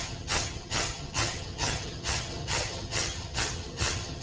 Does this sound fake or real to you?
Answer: fake